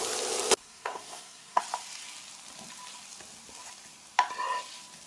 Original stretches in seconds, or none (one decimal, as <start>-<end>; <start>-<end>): 0.0-0.6; 1.6-5.1